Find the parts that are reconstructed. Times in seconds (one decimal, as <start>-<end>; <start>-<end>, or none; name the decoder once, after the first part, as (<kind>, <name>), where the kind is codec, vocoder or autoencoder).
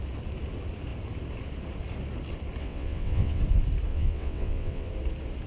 2.6-3.4 (vocoder, WaveNeXt); 3.9-4.9